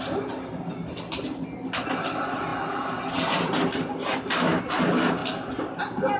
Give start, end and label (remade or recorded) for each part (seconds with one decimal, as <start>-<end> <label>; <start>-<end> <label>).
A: 0.0-6.2 recorded